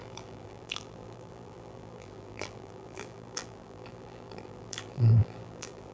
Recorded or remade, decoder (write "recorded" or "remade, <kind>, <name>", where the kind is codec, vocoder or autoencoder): remade, vocoder, BigVGAN v2